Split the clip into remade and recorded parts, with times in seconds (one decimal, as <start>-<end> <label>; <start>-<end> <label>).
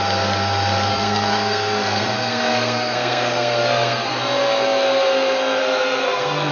0.0-0.9 recorded; 0.9-4.1 remade; 4.1-5.6 recorded; 5.6-6.5 remade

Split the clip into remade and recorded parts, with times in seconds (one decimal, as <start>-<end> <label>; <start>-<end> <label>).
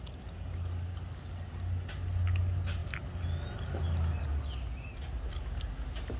0.0-6.2 recorded